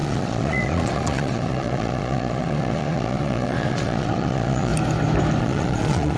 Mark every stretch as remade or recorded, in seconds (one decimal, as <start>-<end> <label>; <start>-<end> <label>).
0.0-4.7 remade; 4.7-5.4 recorded; 5.4-6.2 remade